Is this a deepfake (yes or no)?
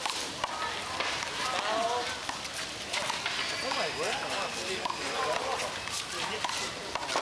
no